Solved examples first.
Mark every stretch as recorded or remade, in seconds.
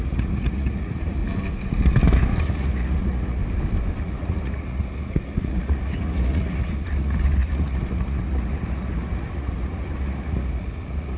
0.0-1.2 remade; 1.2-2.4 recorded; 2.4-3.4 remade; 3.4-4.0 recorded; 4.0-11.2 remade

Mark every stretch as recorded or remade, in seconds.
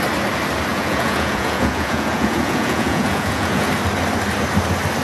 0.0-0.7 recorded; 0.7-3.7 remade; 3.7-5.0 recorded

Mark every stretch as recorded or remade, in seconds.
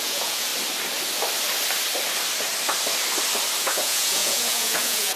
0.0-0.5 remade; 0.5-3.6 recorded; 3.6-5.2 remade